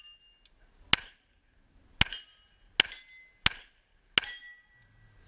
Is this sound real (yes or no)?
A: yes